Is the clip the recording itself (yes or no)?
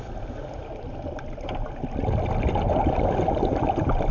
yes